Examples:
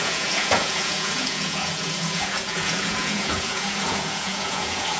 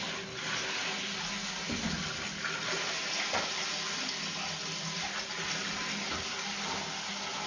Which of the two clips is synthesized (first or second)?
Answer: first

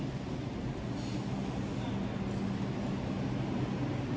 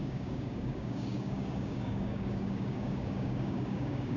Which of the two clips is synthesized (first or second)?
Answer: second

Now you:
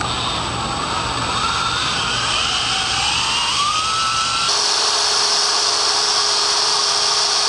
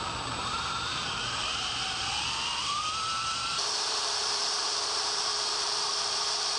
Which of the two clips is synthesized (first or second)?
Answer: second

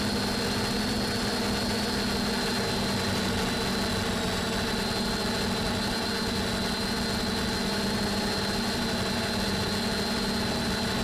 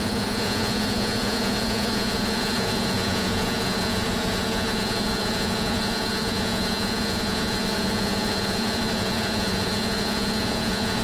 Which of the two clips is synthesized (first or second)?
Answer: second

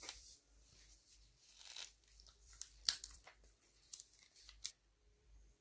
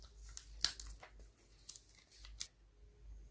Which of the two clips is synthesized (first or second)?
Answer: first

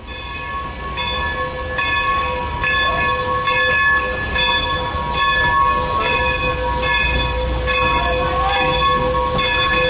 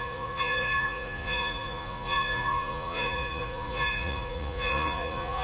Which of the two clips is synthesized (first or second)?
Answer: second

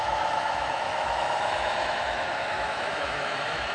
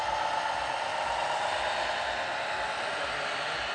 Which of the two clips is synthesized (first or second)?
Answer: first